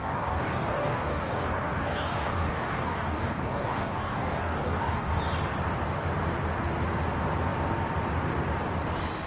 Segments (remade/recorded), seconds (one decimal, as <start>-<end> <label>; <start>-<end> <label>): 0.0-5.2 remade; 5.2-9.3 recorded